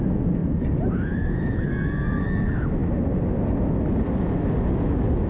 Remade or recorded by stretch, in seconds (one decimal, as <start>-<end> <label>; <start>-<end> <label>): 0.0-0.4 recorded; 0.4-1.7 remade; 1.7-5.3 recorded